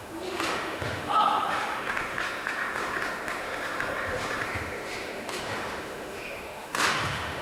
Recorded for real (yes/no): no